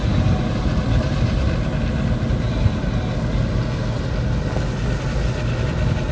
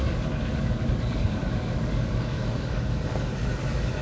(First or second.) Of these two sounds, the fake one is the second